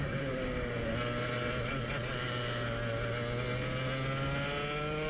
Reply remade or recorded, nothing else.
recorded